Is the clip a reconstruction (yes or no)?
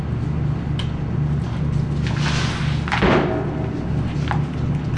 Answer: no